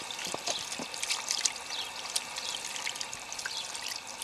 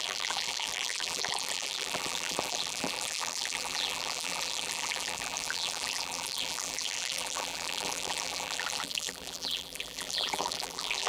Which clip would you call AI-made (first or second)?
second